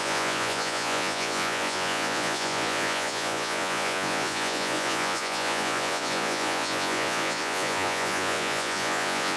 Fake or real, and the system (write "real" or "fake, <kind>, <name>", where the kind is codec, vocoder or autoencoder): fake, vocoder, Vocos